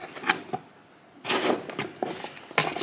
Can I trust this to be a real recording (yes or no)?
yes